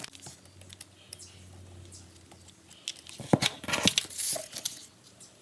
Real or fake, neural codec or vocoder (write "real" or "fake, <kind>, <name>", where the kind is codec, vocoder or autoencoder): real